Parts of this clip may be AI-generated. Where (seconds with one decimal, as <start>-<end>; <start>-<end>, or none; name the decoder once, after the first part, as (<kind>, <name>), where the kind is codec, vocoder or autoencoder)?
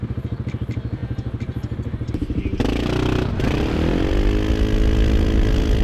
none